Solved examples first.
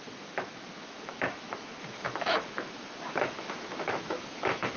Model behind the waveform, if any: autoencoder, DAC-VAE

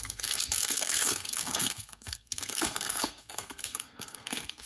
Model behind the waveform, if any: codec, SNAC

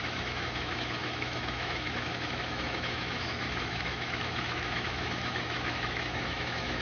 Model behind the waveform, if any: autoencoder, DAC-VAE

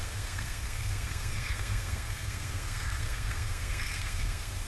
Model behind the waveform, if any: codec, SNAC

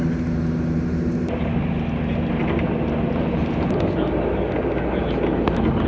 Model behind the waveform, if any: none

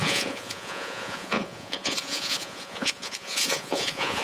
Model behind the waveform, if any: vocoder, Vocos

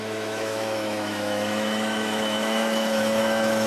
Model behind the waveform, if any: autoencoder, DAC-VAE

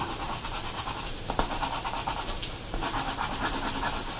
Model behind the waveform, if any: none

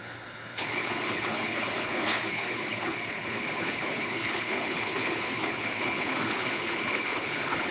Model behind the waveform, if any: codec, HILCodec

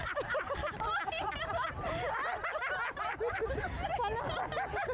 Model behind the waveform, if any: none